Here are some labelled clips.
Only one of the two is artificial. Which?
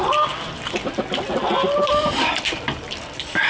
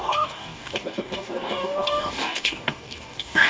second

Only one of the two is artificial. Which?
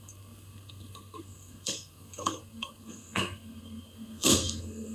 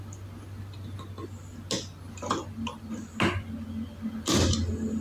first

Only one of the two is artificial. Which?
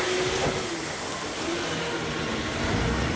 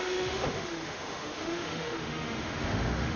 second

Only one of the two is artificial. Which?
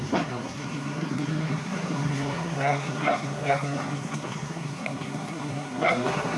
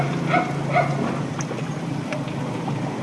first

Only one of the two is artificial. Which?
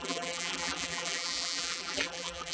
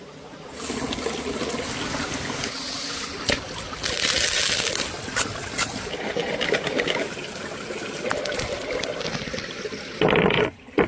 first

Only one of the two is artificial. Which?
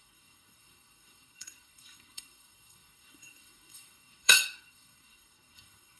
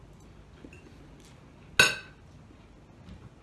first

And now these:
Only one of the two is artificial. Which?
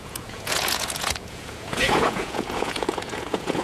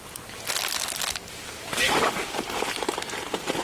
first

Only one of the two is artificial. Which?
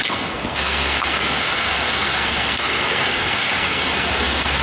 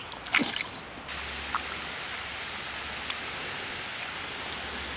first